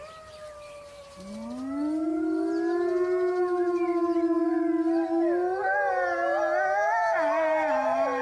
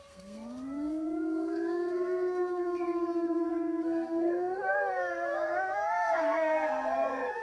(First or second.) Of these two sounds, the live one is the first